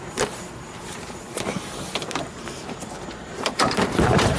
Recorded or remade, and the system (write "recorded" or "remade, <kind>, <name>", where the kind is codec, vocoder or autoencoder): remade, vocoder, BigVGAN v2